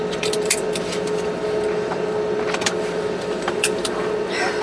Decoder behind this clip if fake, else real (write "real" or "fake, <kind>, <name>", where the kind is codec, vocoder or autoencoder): fake, vocoder, BigVGAN v2